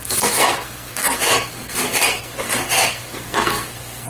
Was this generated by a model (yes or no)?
yes